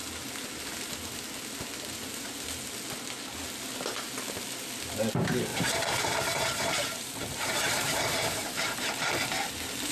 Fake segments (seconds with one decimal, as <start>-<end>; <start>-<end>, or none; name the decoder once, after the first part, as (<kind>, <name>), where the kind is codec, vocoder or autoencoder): 5.5-8.9 (vocoder, BigVGAN v2)